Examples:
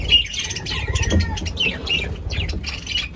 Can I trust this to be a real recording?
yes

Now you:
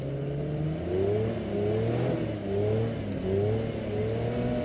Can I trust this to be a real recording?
yes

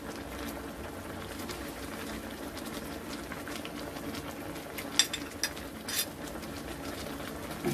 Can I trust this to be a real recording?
yes